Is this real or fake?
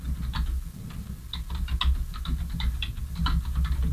real